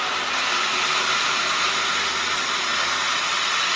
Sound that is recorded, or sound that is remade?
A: recorded